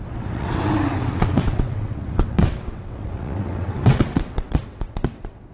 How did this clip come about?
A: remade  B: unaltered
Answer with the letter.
A